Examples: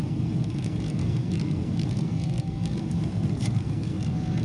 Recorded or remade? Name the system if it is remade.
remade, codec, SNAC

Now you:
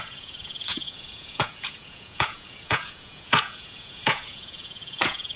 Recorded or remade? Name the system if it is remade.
remade, vocoder, Vocos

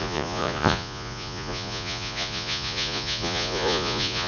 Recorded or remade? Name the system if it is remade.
remade, vocoder, Vocos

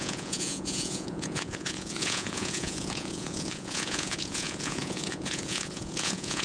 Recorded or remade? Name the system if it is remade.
remade, vocoder, Vocos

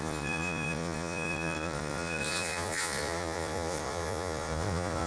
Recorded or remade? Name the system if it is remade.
remade, vocoder, Vocos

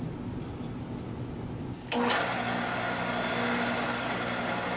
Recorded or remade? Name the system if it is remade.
recorded